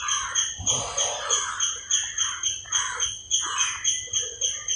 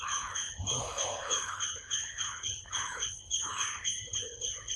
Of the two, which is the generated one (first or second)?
second